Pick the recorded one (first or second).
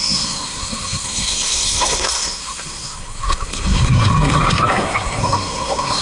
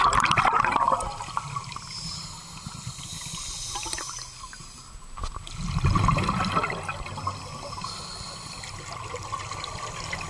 second